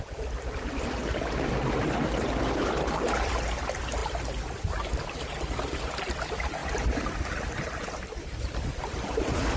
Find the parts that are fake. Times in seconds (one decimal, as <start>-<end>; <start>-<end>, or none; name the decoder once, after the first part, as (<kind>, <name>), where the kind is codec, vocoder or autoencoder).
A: 0.0-1.0 (vocoder, BigVGAN v2); 2.8-4.0; 5.2-6.6; 8.0-9.6